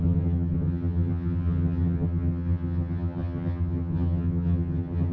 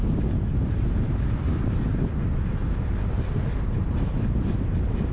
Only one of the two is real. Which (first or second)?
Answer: second